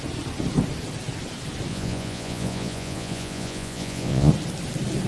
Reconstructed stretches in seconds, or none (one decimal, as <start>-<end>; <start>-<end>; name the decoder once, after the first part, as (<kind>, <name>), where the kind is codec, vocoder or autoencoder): 1.7-4.3 (vocoder, Vocos)